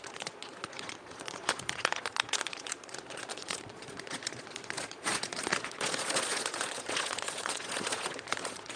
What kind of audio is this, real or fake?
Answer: fake